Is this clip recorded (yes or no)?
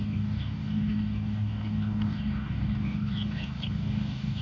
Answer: no